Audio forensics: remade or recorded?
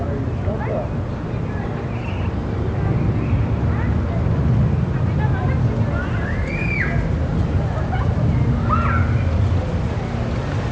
recorded